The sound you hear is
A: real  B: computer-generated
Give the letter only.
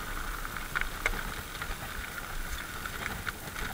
A